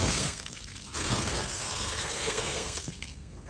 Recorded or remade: remade